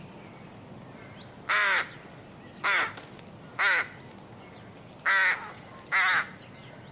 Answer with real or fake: real